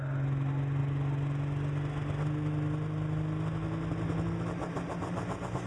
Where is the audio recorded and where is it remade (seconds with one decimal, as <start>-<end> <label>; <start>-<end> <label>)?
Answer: 0.0-5.7 recorded